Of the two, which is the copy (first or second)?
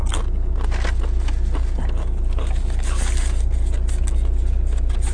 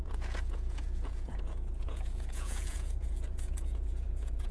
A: second